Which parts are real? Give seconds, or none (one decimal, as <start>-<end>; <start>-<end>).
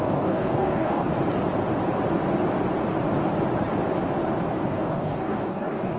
1.1-4.7